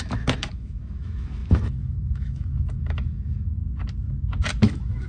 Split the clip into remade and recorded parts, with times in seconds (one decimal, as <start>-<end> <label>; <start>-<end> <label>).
0.0-3.6 remade; 3.6-4.6 recorded; 4.6-5.1 remade